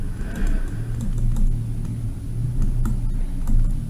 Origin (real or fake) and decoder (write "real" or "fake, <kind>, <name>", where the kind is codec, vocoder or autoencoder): real